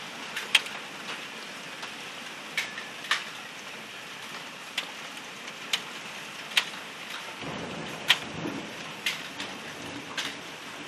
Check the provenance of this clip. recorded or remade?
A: remade